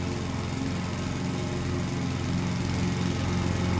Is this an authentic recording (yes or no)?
yes